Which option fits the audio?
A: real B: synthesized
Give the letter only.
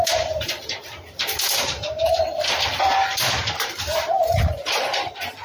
B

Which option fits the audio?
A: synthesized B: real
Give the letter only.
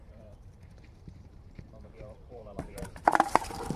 A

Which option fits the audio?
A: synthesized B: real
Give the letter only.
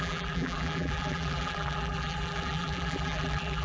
A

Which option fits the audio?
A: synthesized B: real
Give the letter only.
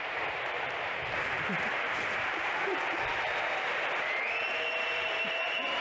A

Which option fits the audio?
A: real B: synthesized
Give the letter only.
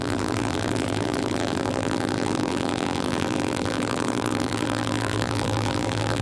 B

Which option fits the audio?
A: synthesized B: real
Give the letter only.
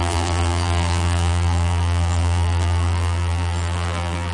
A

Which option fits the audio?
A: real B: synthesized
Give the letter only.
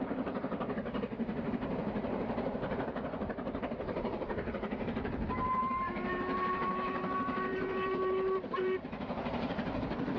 B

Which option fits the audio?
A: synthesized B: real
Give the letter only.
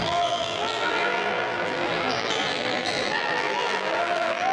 A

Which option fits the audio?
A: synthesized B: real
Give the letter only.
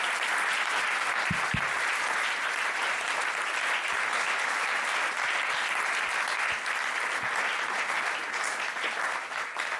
B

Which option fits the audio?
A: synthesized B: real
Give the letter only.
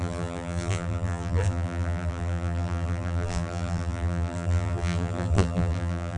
A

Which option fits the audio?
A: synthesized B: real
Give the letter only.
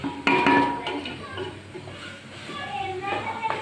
B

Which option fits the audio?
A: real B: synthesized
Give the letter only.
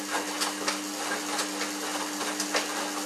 A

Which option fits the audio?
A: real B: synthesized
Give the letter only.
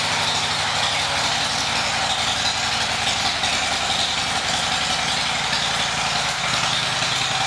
A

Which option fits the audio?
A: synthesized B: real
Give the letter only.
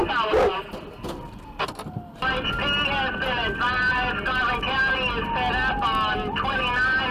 B